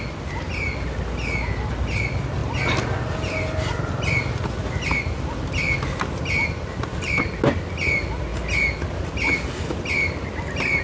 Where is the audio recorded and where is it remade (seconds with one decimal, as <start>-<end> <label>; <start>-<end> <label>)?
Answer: 0.0-10.8 recorded